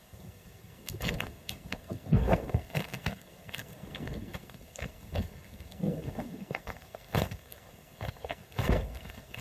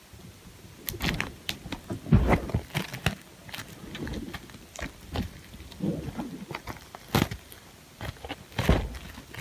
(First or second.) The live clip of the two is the second